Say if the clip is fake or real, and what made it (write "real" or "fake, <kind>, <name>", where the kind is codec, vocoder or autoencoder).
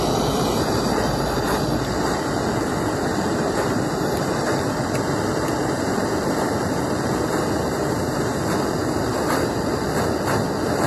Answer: real